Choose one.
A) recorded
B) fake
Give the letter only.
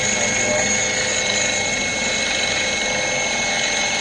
A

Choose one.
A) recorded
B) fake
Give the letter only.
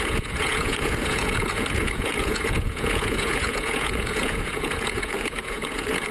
B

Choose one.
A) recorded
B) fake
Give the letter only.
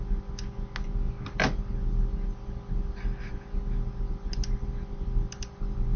A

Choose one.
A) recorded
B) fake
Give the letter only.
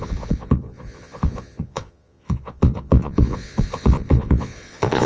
B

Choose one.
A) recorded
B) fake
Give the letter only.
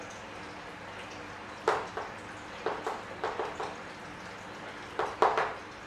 A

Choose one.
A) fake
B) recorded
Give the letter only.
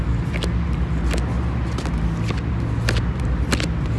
B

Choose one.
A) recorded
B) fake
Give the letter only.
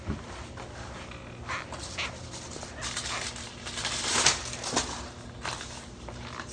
A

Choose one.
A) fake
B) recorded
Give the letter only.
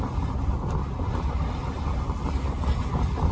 B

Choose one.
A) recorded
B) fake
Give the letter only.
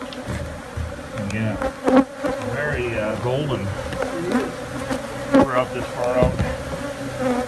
A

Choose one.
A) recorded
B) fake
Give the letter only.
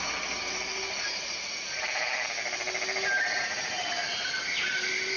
A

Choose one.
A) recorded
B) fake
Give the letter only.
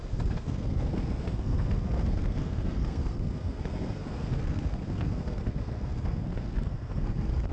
B